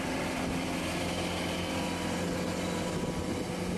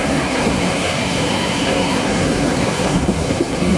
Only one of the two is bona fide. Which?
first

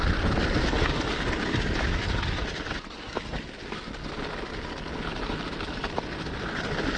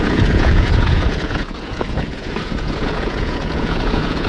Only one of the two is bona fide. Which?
first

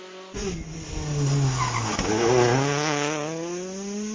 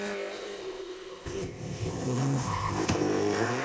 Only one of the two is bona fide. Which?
first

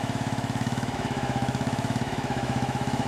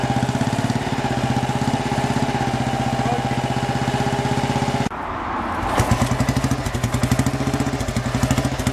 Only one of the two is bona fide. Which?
second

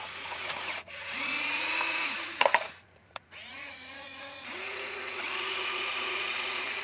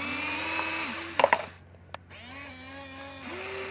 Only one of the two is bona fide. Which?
second